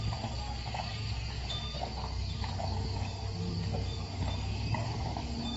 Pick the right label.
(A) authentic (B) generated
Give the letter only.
B